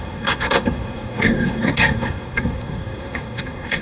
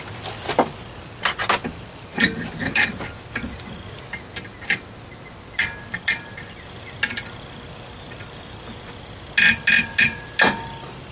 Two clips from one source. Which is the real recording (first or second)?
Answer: second